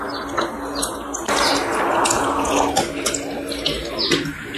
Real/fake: real